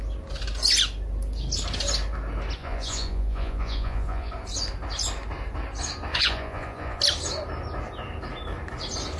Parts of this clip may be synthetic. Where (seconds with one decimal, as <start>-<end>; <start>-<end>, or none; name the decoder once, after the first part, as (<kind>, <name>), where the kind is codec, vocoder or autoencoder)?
2.6-4.3 (vocoder, Vocos); 6.1-7.0